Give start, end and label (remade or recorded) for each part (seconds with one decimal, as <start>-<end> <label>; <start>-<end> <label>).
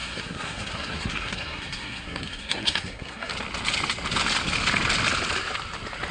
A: 0.0-3.3 remade; 3.3-6.1 recorded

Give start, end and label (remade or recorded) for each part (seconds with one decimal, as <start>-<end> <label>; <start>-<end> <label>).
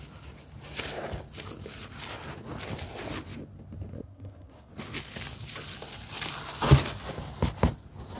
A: 0.0-3.9 recorded; 3.9-4.7 remade; 4.7-8.2 recorded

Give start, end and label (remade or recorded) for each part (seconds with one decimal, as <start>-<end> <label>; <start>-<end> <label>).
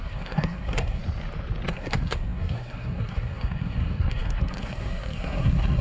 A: 0.0-1.0 remade; 1.0-1.7 recorded; 1.7-5.8 remade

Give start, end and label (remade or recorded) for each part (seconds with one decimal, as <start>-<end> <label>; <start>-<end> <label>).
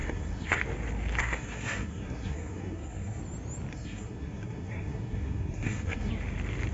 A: 0.0-0.6 remade; 0.6-1.2 recorded; 1.2-3.2 remade; 3.2-3.7 recorded; 3.7-6.1 remade; 6.1-6.7 recorded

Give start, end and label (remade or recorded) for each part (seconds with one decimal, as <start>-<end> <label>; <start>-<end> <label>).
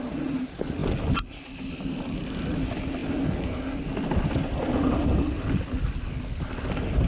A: 0.0-7.1 recorded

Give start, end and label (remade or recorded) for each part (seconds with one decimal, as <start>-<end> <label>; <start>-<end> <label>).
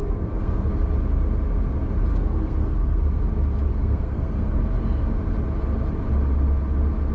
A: 0.0-0.7 remade; 0.7-2.1 recorded; 2.1-3.2 remade; 3.2-3.7 recorded; 3.7-4.6 remade; 4.6-7.1 recorded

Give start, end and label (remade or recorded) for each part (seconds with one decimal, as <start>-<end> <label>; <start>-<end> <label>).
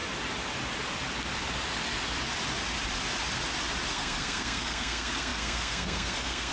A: 0.0-3.9 recorded; 3.9-6.5 remade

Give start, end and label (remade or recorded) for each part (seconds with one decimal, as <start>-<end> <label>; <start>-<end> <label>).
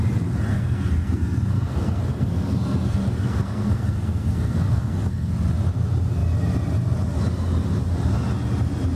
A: 0.0-0.5 recorded; 0.5-5.3 remade; 5.3-9.0 recorded